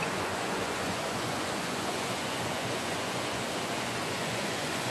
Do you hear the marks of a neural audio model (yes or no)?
yes